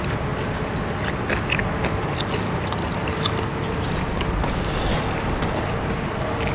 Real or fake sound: real